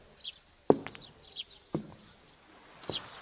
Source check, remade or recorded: recorded